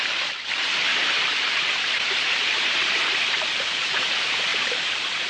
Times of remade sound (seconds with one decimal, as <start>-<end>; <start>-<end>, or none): 1.0-4.1; 4.5-5.3